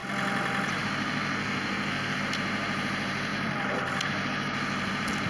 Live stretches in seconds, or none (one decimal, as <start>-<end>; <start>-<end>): 0.0-1.3; 2.2-5.3